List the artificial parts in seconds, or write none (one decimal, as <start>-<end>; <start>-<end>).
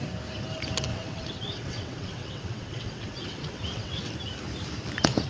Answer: 0.9-4.1